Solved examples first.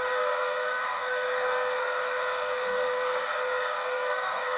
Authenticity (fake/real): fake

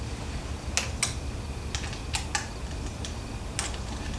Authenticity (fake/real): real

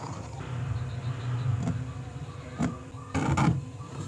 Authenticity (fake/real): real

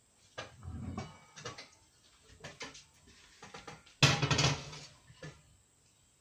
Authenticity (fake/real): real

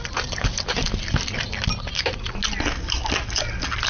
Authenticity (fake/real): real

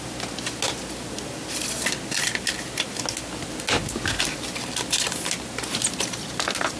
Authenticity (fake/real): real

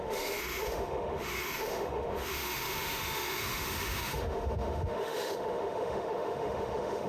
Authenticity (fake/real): fake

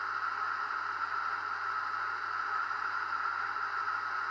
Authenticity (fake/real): real